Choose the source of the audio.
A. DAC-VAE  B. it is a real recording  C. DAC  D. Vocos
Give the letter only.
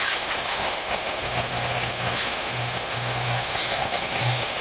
A